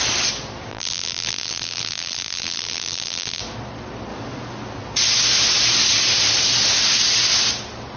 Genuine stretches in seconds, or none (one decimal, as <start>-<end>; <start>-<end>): 0.0-0.7; 3.4-8.0